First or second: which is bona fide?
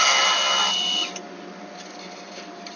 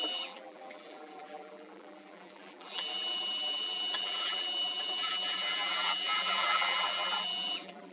first